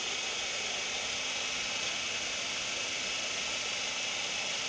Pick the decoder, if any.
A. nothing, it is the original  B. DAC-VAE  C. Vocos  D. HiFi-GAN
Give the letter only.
A